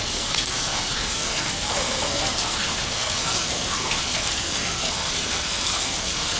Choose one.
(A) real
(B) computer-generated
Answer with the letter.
B